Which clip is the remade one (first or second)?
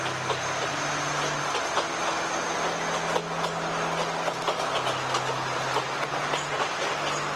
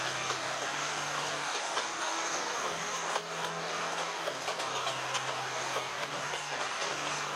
second